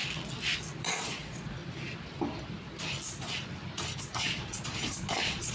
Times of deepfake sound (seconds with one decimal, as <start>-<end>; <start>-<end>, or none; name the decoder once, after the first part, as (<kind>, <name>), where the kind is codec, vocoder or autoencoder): 0.8-1.6 (vocoder, Vocos); 4.0-5.5